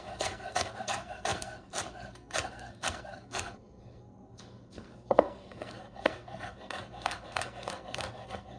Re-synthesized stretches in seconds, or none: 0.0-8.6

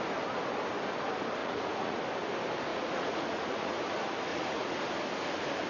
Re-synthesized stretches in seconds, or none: 1.4-2.0; 2.7-3.8; 4.3-4.8

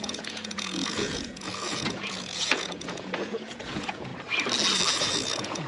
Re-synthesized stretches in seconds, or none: 0.0-4.1; 4.9-5.7

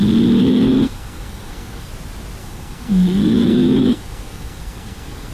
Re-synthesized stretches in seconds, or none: 0.4-1.9; 2.4-5.3